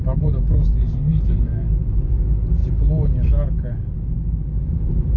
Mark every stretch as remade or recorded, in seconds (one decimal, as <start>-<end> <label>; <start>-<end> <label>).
0.0-0.8 recorded; 0.8-1.7 remade; 1.7-5.2 recorded

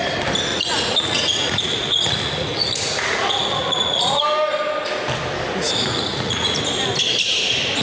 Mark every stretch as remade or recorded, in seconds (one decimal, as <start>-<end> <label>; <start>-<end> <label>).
0.0-0.5 recorded; 0.5-4.2 remade; 4.2-5.9 recorded; 5.9-6.6 remade; 6.6-7.8 recorded

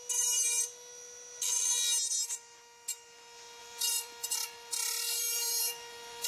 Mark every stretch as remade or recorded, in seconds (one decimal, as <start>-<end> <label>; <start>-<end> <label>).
0.0-3.6 recorded; 3.6-6.3 remade

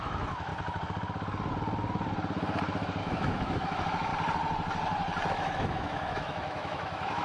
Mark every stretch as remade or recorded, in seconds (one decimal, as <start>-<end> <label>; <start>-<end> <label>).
0.0-0.5 remade; 0.5-3.0 recorded; 3.0-4.1 remade; 4.1-5.3 recorded; 5.3-7.2 remade